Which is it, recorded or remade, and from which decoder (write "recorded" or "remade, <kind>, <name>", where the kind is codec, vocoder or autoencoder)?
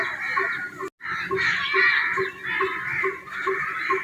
recorded